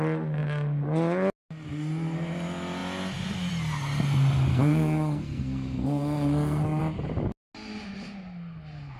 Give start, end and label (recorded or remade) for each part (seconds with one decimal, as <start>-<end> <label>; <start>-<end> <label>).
0.0-4.5 recorded; 4.5-6.8 remade; 6.8-9.0 recorded